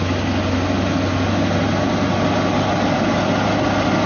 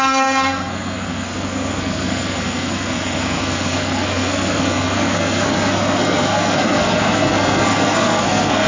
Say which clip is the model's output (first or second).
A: second